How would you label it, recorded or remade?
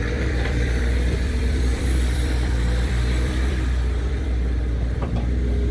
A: remade